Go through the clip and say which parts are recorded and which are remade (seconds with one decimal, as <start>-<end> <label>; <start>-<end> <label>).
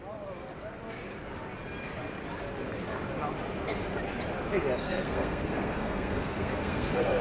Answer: 0.0-4.8 recorded; 4.8-7.2 remade